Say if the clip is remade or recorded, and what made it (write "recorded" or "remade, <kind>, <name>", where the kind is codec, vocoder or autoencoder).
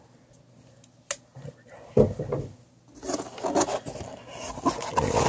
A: recorded